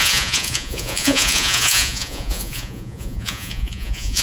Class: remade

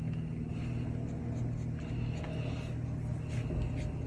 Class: recorded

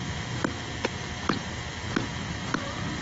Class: recorded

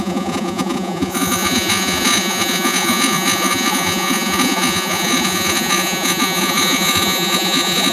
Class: remade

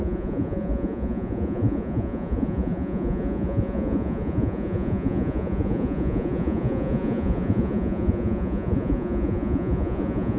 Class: remade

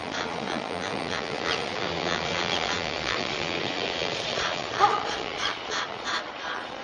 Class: remade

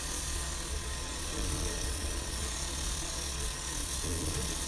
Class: remade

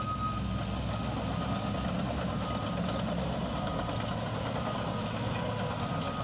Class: recorded